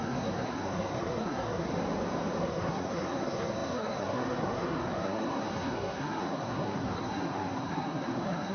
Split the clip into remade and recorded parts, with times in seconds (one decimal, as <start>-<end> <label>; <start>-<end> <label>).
0.0-1.7 remade; 1.7-2.4 recorded; 2.4-8.5 remade